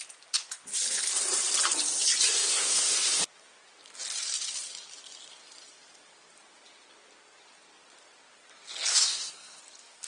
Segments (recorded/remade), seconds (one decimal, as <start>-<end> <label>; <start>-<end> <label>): 0.0-2.3 recorded; 2.3-3.2 remade; 3.2-8.9 recorded; 8.9-9.6 remade; 9.6-10.1 recorded